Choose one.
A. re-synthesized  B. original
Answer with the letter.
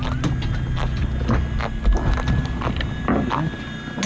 B